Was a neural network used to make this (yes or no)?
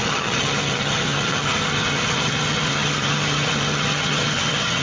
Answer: yes